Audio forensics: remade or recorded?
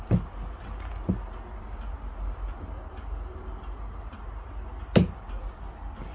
recorded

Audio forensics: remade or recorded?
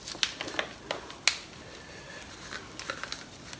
recorded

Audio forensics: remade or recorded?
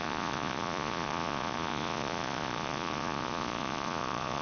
remade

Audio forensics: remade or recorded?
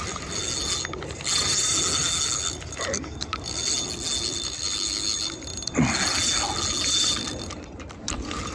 recorded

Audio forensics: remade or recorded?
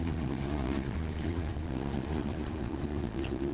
remade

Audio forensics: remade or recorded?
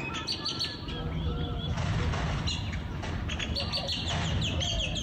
recorded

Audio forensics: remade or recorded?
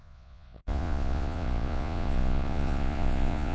remade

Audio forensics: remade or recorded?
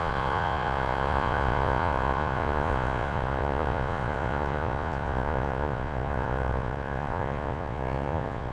remade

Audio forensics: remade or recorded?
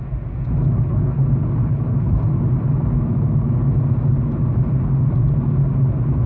recorded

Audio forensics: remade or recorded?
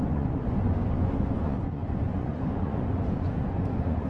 remade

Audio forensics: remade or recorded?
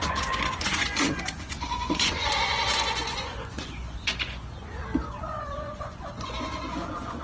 remade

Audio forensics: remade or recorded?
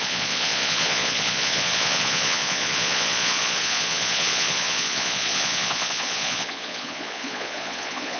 remade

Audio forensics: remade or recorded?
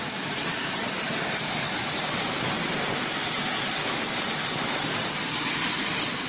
recorded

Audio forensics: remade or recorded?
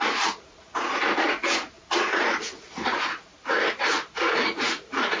remade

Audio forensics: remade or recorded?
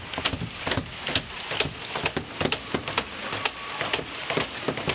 recorded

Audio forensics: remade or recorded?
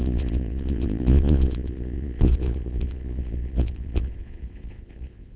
remade